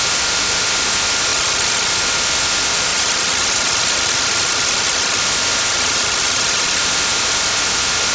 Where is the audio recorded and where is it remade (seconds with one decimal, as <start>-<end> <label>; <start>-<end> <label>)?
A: 0.0-1.3 recorded; 1.3-1.9 remade; 1.9-2.9 recorded; 2.9-5.2 remade; 5.2-5.7 recorded; 5.7-6.8 remade; 6.8-8.1 recorded